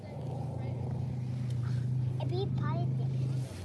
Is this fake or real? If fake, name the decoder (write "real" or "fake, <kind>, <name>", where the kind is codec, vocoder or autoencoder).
real